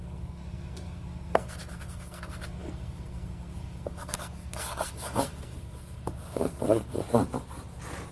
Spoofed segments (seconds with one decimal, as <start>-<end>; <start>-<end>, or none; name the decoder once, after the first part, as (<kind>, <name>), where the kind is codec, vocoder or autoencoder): 0.0-7.0 (codec, SNAC)